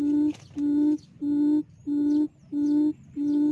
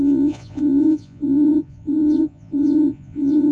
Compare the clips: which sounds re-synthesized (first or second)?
second